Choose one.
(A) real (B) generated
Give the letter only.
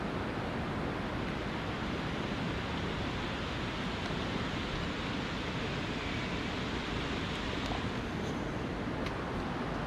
A